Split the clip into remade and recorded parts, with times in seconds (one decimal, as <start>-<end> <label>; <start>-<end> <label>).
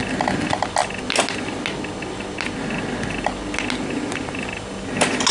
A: 0.0-5.3 recorded